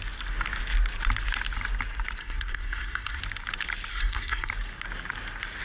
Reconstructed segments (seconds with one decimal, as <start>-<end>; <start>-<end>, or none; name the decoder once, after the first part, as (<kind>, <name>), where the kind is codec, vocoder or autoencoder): 2.2-3.2 (codec, SNAC); 3.9-4.5